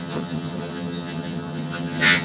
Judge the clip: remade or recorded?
remade